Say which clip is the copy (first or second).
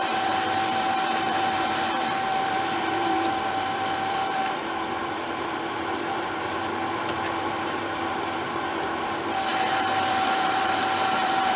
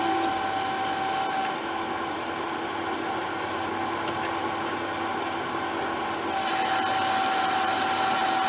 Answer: first